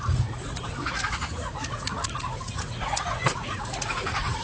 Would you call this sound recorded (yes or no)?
no